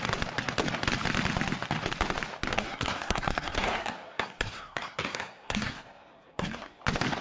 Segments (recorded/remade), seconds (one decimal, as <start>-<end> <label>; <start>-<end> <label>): 0.0-2.5 recorded; 2.5-6.8 remade; 6.8-7.2 recorded